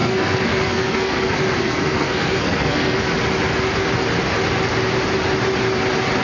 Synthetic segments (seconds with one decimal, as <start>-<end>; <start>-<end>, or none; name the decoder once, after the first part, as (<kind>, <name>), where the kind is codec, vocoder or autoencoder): 0.0-3.0 (codec, SNAC)

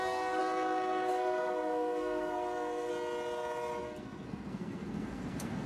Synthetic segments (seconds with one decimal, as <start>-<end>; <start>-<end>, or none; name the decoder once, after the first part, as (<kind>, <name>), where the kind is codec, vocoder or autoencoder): 0.0-0.4 (codec, SNAC); 1.1-2.9; 3.8-5.7

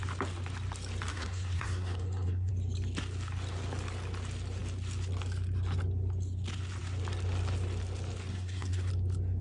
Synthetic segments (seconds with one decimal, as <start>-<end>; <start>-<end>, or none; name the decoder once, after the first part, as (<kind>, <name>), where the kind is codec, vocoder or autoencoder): 1.1-2.5 (codec, SNAC); 8.3-8.9

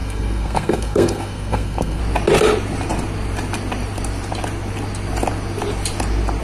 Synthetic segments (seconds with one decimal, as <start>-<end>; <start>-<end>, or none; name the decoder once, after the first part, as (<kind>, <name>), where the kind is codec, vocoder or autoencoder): 0.0-2.0 (codec, SNAC)

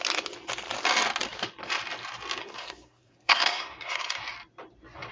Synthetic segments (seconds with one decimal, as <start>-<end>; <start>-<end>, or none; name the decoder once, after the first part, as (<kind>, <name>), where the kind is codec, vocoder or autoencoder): 2.4-4.2 (codec, SNAC)